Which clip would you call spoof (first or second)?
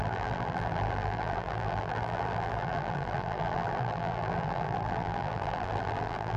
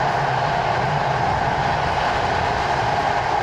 first